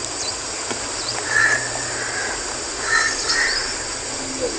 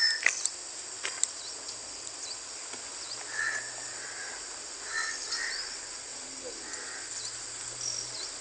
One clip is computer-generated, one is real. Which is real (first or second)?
second